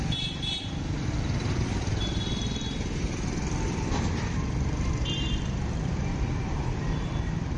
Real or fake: fake